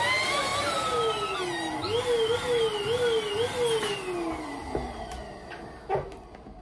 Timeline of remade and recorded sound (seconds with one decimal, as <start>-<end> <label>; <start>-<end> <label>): 0.0-6.6 recorded